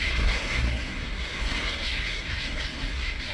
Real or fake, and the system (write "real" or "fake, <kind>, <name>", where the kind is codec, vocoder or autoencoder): fake, codec, SNAC